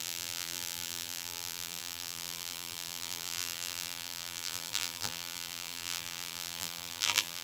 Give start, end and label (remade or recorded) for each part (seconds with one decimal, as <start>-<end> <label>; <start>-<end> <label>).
0.0-7.4 remade